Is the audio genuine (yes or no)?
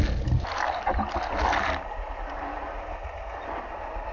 yes